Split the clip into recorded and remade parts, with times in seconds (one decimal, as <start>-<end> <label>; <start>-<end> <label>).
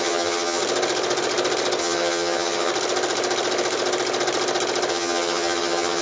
0.0-0.6 remade; 0.6-1.8 recorded; 1.8-2.7 remade; 2.7-4.9 recorded; 4.9-6.0 remade